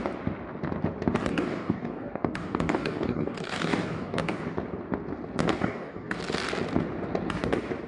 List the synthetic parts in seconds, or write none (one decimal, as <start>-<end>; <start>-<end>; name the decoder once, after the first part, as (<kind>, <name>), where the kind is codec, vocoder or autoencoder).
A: 1.3-4.4 (codec, DAC); 5.4-6.2